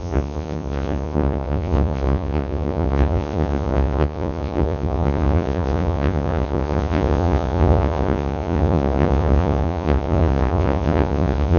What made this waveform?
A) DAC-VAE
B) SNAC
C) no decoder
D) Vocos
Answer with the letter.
D